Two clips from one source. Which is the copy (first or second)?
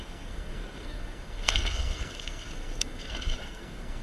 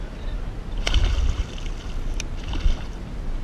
first